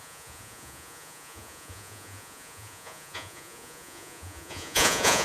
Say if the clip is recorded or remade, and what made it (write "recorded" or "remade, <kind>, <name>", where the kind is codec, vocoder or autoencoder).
remade, vocoder, Vocos